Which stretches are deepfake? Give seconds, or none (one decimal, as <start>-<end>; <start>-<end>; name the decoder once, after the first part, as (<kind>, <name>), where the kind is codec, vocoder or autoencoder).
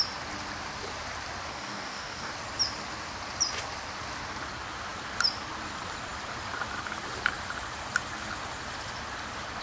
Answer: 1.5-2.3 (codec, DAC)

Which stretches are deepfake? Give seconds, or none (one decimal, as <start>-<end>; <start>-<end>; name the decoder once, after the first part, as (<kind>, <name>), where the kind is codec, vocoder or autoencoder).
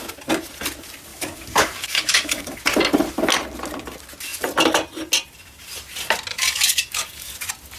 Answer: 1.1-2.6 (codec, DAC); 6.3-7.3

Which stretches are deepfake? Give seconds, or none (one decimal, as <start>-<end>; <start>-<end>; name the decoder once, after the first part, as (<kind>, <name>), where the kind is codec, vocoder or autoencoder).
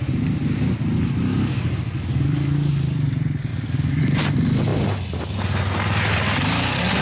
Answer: 1.3-2.7 (codec, DAC); 3.5-4.2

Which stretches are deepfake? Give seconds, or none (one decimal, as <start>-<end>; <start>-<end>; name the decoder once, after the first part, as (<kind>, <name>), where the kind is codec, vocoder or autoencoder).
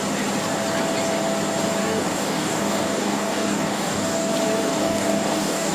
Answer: 1.8-4.3 (codec, DAC); 4.7-5.7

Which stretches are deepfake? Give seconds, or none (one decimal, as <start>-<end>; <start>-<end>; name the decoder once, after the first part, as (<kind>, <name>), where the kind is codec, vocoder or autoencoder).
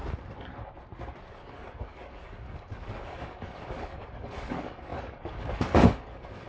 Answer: 1.3-6.5 (codec, DAC)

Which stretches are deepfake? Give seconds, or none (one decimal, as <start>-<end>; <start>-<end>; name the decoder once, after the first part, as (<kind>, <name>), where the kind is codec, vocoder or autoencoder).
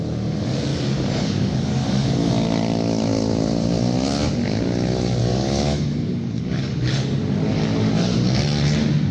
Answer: 0.7-2.3 (codec, DAC); 5.2-7.2